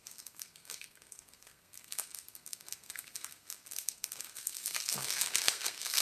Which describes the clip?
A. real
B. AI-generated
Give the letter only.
B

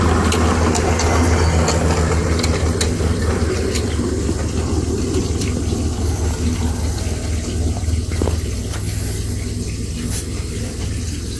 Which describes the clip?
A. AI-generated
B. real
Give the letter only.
B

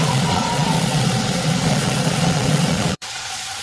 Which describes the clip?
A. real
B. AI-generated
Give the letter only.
B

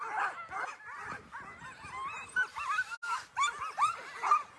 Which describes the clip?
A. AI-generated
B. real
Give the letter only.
B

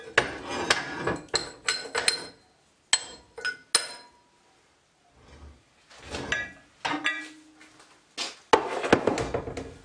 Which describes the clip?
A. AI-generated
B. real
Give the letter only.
B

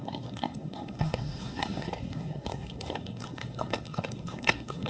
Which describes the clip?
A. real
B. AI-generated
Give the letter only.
B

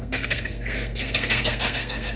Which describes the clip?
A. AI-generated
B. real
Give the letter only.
A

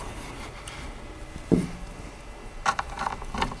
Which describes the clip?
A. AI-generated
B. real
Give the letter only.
B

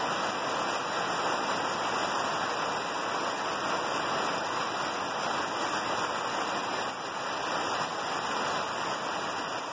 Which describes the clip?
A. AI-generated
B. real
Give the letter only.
B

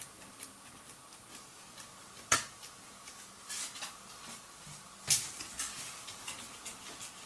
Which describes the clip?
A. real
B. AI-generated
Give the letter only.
A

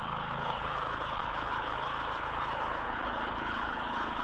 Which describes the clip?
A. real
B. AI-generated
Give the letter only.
B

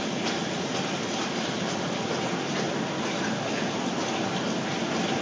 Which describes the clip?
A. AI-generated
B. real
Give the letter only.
B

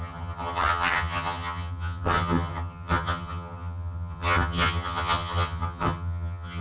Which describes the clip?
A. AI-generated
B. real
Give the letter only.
A